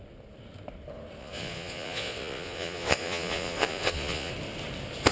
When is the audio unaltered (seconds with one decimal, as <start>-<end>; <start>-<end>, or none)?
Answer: 0.0-1.2; 4.3-5.1